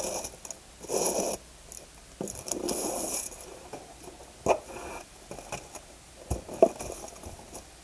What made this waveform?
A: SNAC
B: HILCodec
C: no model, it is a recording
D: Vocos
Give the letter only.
C